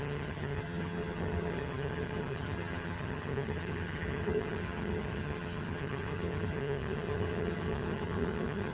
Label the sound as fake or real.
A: fake